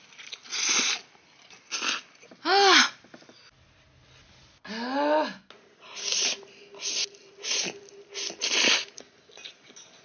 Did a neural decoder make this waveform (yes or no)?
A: no